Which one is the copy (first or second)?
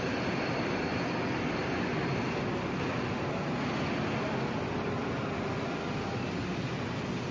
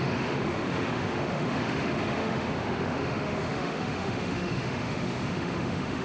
second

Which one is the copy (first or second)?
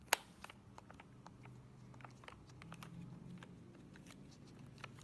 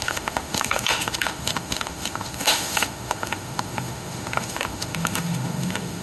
second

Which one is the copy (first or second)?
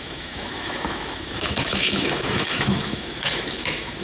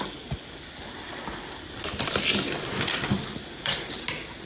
first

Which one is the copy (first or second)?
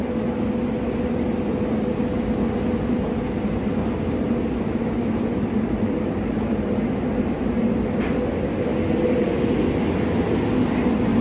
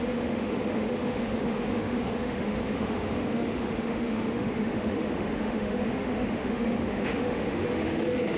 second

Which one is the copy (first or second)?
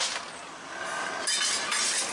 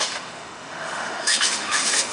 second